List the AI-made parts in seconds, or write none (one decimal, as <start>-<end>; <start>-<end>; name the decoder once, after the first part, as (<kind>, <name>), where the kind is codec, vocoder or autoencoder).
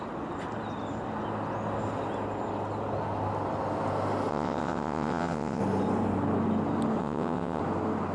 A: 4.3-5.6 (vocoder, WaveNeXt); 7.0-7.6